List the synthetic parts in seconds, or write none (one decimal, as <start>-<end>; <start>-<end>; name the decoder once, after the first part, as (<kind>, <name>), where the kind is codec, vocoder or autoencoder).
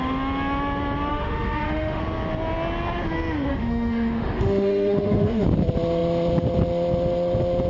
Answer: 1.1-2.0 (autoencoder, DAC-VAE); 3.5-5.4